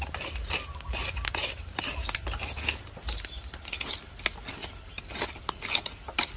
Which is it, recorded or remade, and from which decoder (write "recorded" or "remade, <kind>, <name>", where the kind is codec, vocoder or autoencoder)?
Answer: recorded